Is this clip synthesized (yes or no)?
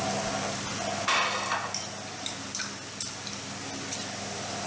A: no